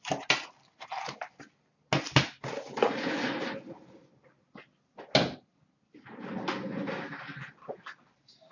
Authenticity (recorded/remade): recorded